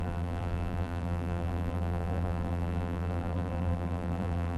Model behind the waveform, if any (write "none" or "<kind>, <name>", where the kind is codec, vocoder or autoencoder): vocoder, BigVGAN v2